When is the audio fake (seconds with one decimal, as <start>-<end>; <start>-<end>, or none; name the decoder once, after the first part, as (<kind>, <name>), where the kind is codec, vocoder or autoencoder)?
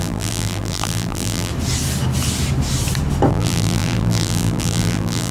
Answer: 0.0-1.5 (vocoder, BigVGAN v2); 3.3-5.3